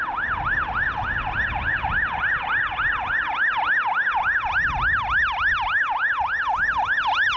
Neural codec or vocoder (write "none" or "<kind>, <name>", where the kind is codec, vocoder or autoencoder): none